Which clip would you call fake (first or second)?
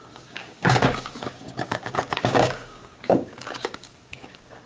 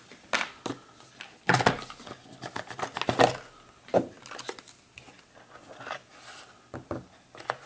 first